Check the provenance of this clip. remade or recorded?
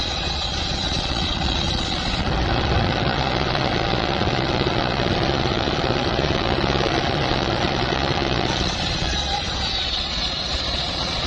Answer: remade